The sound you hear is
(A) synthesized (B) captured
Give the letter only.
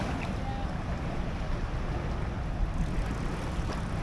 B